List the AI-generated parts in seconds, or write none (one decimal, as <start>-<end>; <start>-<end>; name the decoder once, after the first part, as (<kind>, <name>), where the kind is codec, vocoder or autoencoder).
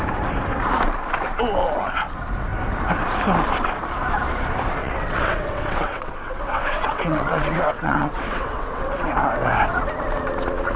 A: 4.8-8.9 (vocoder, WaveNeXt)